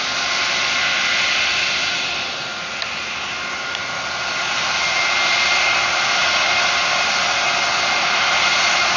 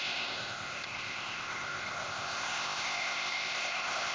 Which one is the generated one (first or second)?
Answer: second